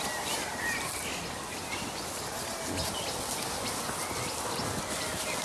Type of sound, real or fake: real